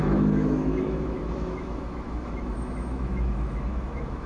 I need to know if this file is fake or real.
fake